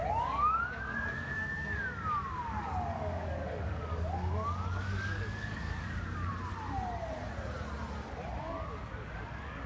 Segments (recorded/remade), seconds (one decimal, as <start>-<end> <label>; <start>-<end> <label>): 0.0-6.3 remade; 6.3-8.4 recorded; 8.4-9.7 remade